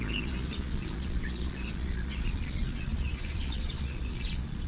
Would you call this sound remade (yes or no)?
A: yes